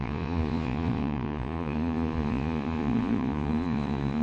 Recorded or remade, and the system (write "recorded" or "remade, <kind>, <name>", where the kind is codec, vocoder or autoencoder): remade, vocoder, Vocos